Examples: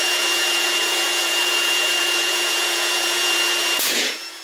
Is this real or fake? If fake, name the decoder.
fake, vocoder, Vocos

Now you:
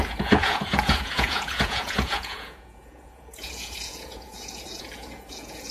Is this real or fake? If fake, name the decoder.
fake, vocoder, Vocos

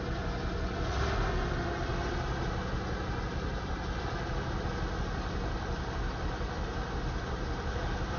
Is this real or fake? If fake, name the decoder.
real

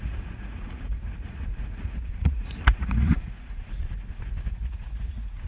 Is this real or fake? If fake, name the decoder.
fake, vocoder, Vocos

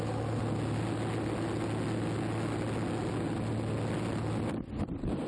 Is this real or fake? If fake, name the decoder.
real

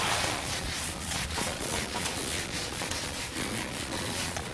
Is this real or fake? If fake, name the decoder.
fake, vocoder, Vocos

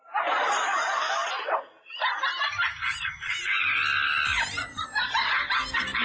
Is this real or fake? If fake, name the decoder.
real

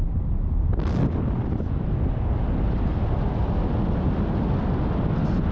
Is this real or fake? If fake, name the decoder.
real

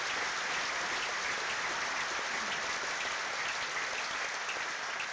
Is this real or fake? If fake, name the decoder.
real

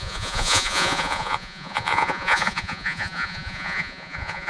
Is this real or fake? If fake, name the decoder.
fake, vocoder, Vocos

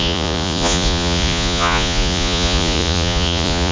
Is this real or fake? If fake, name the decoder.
fake, vocoder, Vocos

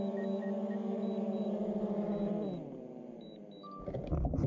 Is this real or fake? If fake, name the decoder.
real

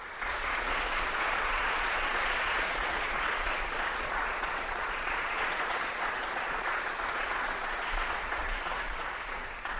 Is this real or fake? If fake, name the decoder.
fake, vocoder, Vocos